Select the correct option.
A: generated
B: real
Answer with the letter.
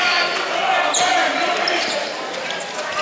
B